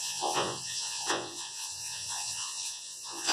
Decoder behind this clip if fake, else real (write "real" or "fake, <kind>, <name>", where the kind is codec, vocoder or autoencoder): fake, vocoder, Vocos